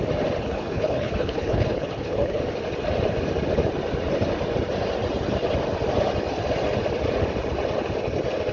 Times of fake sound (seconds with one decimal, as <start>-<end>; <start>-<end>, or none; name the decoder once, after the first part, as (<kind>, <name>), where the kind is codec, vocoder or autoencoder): 0.4-2.4 (codec, HILCodec)